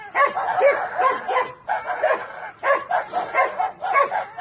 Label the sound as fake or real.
real